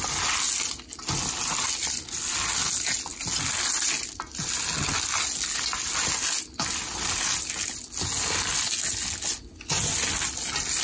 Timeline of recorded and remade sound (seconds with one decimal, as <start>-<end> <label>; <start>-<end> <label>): 0.0-10.8 recorded